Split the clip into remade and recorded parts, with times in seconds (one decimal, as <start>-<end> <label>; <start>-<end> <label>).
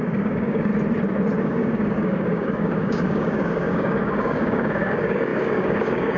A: 0.0-0.7 remade; 0.7-1.4 recorded; 1.4-6.2 remade